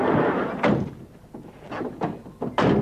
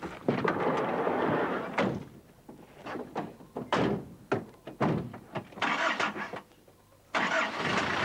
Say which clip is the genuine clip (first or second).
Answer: first